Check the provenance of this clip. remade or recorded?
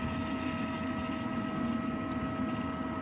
recorded